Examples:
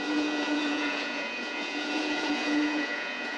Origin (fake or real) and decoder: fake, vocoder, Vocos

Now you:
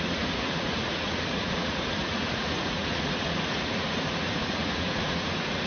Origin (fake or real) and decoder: fake, vocoder, Vocos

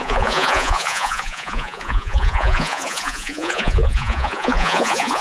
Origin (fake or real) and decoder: fake, vocoder, Vocos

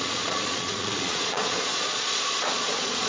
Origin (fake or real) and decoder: fake, vocoder, Vocos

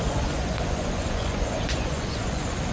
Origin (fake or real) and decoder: fake, vocoder, Vocos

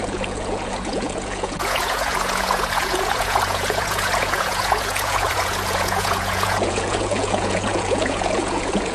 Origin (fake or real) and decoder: fake, vocoder, Vocos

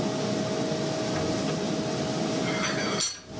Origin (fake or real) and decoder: real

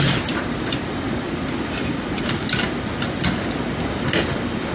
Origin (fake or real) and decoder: real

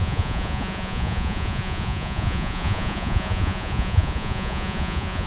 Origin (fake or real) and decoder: fake, vocoder, Vocos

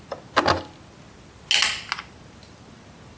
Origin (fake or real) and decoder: real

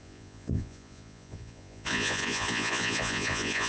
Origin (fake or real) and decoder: fake, vocoder, Vocos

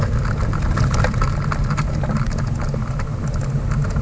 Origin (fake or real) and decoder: real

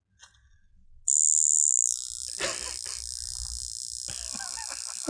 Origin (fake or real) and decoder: real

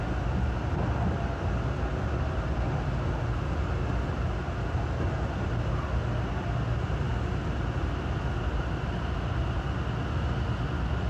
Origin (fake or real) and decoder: real